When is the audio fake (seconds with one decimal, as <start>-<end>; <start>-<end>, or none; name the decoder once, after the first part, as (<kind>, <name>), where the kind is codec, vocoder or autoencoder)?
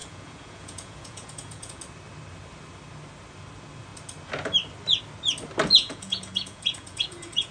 0.0-1.8 (vocoder, Vocos); 5.8-7.5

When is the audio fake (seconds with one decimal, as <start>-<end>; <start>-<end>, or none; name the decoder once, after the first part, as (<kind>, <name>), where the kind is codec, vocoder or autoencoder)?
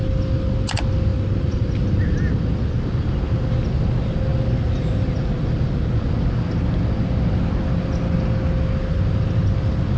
1.1-1.7 (vocoder, BigVGAN v2)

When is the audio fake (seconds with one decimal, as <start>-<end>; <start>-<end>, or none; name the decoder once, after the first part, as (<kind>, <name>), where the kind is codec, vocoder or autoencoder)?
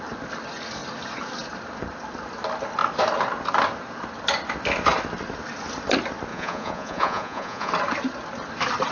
6.3-7.7 (vocoder, Vocos)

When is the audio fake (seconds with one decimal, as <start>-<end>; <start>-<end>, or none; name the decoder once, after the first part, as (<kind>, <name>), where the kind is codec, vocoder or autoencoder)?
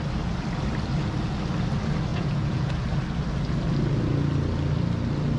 2.1-2.7 (vocoder, Vocos)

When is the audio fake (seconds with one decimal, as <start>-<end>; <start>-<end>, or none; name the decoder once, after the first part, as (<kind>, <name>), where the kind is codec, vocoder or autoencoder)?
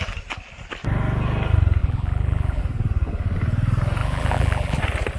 1.8-2.6 (vocoder, BigVGAN v2); 4.0-4.8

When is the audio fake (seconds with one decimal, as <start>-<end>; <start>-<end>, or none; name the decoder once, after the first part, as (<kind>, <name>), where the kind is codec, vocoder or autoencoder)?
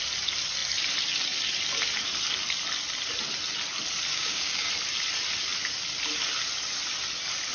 4.1-4.7 (codec, DAC)